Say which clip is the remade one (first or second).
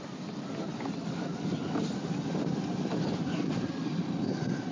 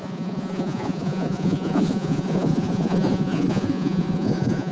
second